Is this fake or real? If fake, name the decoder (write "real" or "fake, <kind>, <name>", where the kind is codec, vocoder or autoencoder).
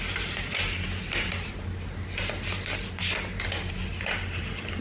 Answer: real